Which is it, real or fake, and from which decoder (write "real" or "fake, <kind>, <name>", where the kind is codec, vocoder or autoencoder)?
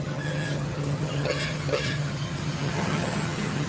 fake, vocoder, HiFi-GAN